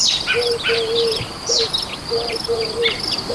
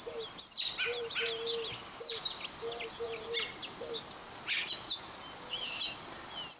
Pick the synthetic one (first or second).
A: first